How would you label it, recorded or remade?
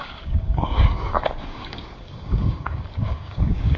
remade